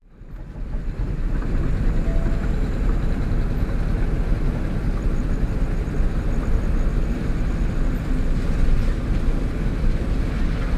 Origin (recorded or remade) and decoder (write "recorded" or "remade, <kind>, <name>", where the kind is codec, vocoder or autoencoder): recorded